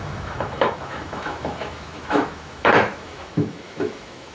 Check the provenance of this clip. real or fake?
fake